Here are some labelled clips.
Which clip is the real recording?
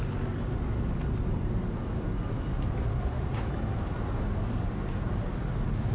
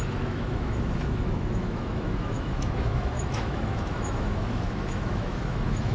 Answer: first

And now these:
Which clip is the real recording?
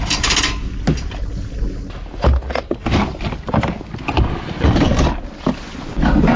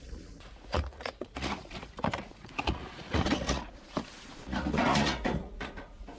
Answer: first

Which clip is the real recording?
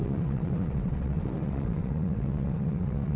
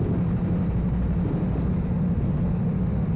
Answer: second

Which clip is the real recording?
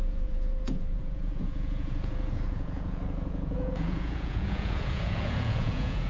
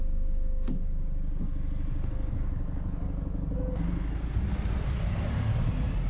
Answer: second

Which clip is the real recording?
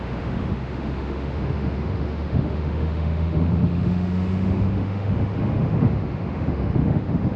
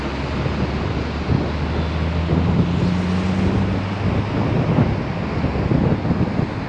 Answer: second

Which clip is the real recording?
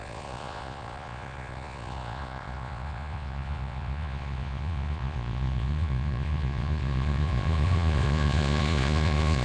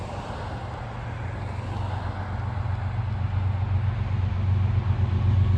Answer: second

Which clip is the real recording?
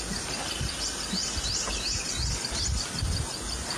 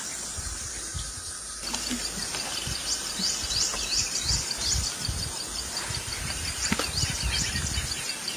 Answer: first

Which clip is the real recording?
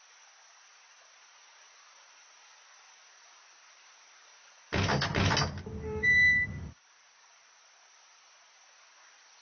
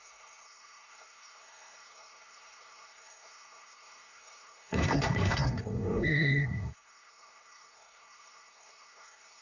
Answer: first